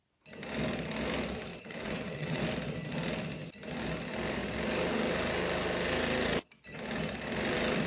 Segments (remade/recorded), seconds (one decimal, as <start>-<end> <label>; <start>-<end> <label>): 0.0-1.5 recorded; 1.5-2.4 remade; 2.4-7.9 recorded